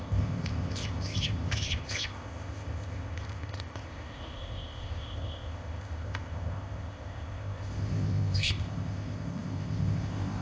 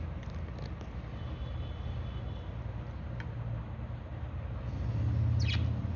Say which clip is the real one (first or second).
second